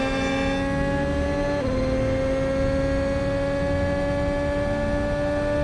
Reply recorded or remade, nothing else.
recorded